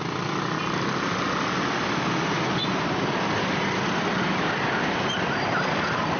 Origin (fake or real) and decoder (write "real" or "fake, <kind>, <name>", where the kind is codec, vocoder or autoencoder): real